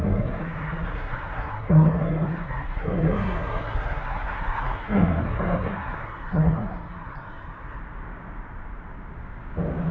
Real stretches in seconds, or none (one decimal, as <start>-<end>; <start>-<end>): 7.8-9.9